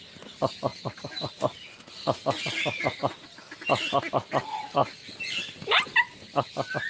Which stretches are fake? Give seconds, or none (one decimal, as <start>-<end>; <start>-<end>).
none